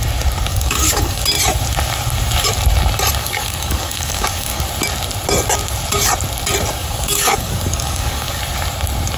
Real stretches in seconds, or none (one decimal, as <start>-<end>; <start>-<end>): 0.0-0.5; 1.2-3.2; 4.6-6.8; 8.4-9.2